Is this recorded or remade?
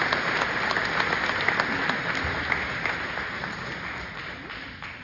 recorded